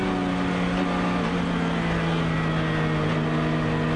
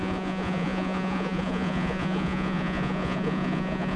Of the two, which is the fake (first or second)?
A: second